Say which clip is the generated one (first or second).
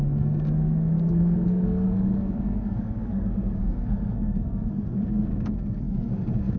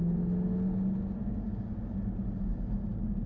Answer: first